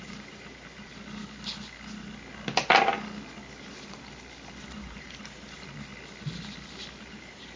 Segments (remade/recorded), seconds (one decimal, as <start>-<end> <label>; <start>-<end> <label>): 0.0-0.9 remade; 0.9-4.8 recorded; 4.8-5.9 remade; 5.9-7.1 recorded; 7.1-7.6 remade